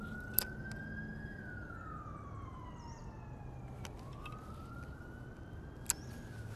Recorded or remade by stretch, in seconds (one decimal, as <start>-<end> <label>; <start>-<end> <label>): 0.0-6.6 recorded